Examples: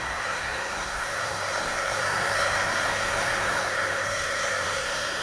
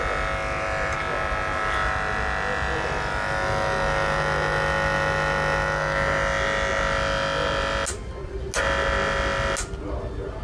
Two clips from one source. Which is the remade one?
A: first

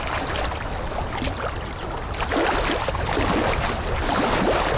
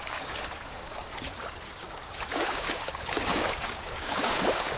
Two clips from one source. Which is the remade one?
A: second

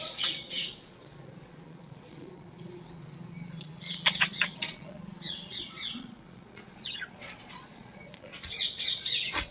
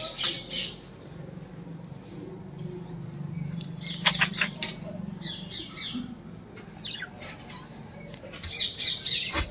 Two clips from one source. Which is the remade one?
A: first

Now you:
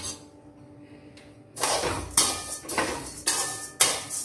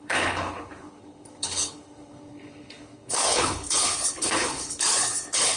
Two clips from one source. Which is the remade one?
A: second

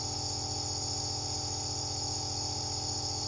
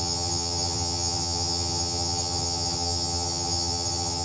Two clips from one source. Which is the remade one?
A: second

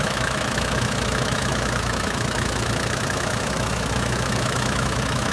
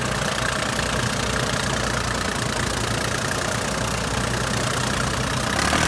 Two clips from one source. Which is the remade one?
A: first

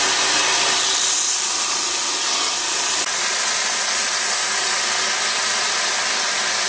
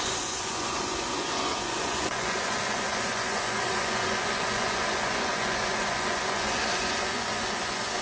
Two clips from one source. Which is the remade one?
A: second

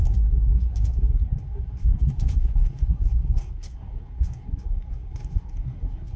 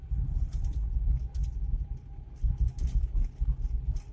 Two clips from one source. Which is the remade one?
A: first